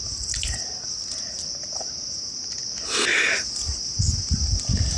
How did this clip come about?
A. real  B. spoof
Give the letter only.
A